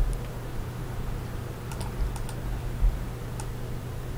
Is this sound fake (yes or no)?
yes